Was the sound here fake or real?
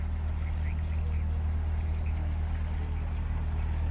real